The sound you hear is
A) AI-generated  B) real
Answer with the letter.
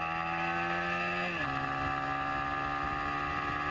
B